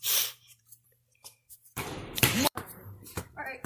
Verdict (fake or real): fake